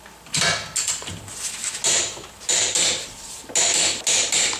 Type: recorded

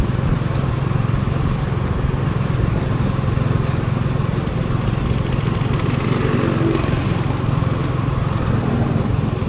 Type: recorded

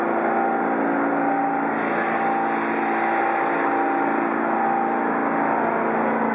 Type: recorded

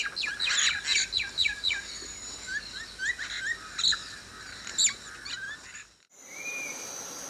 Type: recorded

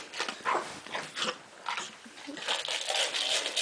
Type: recorded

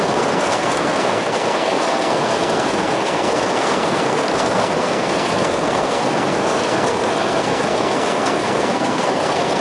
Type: remade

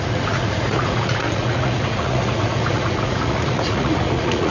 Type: remade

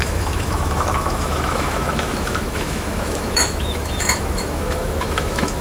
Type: remade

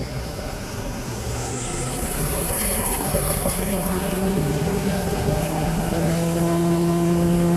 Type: remade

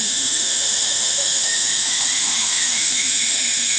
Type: remade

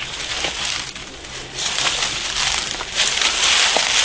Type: recorded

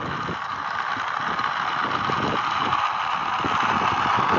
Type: recorded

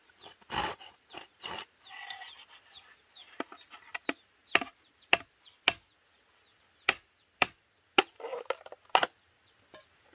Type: recorded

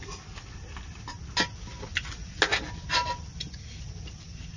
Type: recorded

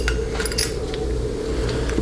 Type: recorded